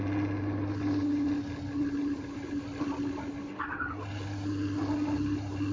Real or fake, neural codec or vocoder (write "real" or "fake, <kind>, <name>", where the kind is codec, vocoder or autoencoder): real